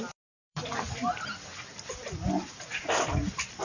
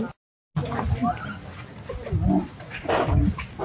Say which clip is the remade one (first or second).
first